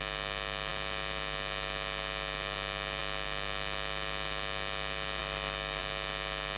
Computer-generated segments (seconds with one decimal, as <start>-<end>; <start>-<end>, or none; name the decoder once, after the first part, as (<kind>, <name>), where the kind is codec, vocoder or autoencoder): 5.2-5.8 (autoencoder, DAC-VAE)